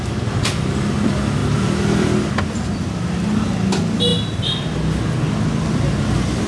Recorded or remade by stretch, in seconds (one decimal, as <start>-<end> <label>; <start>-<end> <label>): 0.0-6.5 recorded